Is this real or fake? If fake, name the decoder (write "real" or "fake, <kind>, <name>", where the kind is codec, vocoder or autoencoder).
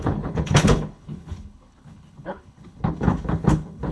fake, codec, HILCodec